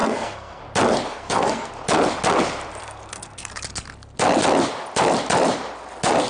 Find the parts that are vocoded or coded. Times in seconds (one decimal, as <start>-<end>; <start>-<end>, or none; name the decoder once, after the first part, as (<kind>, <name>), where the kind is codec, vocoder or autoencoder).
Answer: 0.0-0.6 (codec, SNAC); 1.1-1.7; 2.8-3.5